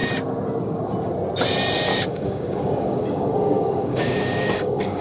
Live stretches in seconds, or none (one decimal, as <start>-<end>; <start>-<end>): 0.0-1.9